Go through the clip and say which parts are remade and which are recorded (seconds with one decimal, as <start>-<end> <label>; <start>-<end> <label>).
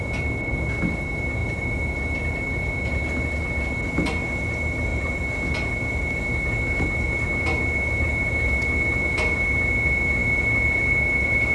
0.0-11.5 recorded